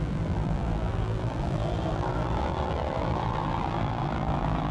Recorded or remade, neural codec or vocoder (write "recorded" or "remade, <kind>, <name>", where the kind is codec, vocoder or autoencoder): remade, vocoder, BigVGAN v2